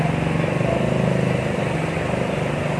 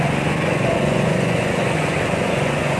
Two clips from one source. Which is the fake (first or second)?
second